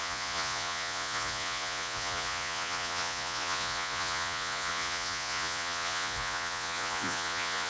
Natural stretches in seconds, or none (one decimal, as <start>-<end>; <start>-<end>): none